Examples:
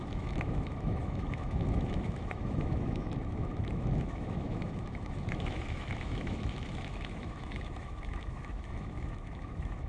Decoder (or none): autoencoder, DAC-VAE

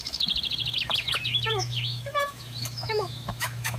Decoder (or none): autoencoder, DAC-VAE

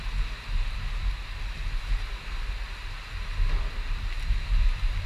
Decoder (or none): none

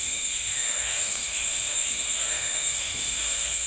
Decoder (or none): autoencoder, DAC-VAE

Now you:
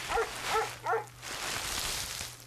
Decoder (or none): none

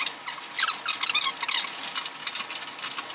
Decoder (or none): none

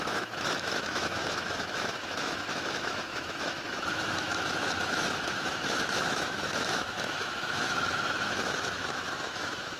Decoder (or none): autoencoder, DAC-VAE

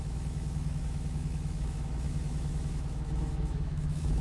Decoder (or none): autoencoder, DAC-VAE